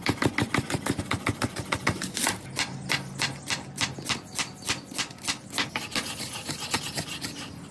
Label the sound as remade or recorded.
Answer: recorded